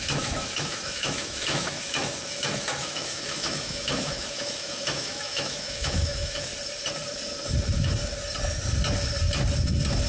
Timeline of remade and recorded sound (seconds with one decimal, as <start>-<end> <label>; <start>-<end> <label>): 0.0-6.5 remade; 6.5-10.1 recorded